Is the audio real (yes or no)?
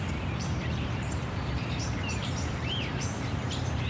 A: no